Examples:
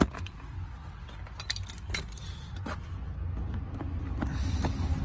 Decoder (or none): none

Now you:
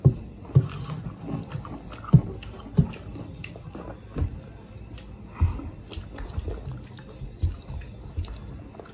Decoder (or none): none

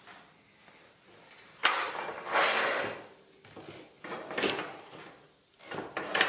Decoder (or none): none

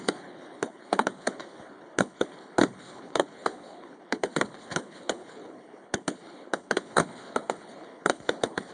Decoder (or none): codec, HILCodec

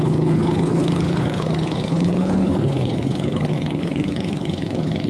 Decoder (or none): codec, HILCodec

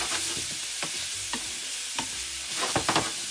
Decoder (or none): none